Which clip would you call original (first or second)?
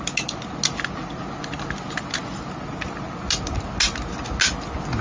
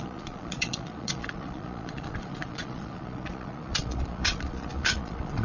first